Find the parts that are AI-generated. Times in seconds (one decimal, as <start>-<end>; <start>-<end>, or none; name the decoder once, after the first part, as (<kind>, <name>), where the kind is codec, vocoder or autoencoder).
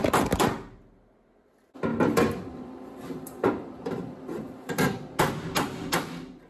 1.9-5.2 (vocoder, BigVGAN v2)